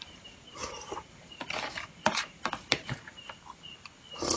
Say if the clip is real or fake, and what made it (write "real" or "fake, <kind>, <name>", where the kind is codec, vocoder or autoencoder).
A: fake, vocoder, BigVGAN v2